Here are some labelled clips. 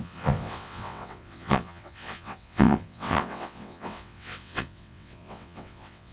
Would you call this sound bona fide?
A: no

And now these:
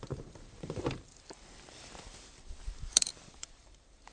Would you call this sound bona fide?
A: no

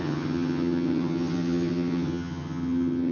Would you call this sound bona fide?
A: no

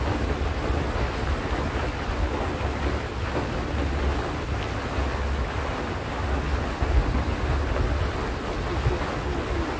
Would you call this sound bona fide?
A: yes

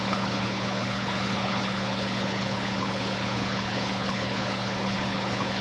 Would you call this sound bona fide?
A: no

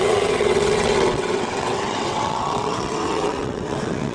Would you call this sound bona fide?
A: no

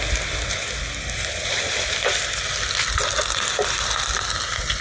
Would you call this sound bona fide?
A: yes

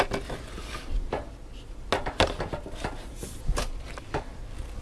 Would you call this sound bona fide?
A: yes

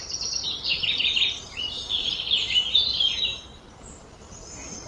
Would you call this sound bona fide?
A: yes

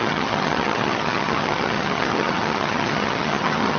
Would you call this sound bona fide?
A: no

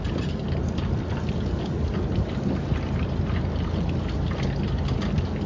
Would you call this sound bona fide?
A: yes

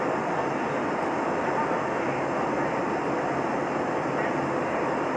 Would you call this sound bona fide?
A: yes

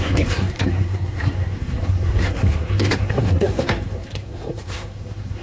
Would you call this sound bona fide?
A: no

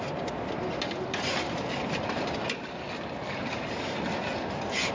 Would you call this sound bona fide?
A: yes